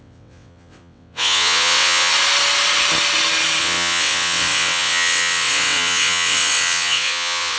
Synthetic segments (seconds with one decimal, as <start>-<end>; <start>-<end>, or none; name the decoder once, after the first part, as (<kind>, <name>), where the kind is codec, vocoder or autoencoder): 0.0-2.1 (vocoder, WaveNeXt); 3.6-7.6